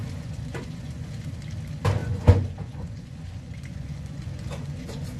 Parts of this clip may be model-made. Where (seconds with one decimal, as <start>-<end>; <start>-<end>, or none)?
0.0-1.3; 2.0-5.2